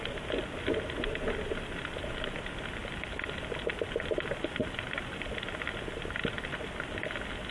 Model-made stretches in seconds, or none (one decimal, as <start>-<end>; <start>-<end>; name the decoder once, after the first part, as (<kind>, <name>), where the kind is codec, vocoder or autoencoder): none